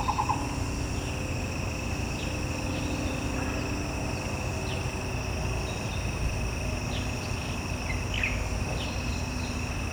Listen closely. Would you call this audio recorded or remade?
recorded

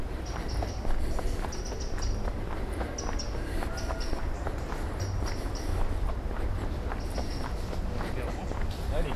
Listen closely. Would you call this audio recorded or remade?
recorded